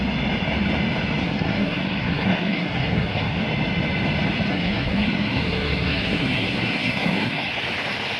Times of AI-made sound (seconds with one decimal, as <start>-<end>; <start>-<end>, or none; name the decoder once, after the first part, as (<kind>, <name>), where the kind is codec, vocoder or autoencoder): 1.2-3.4 (codec, SNAC); 4.5-7.5